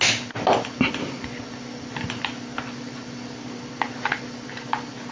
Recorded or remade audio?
recorded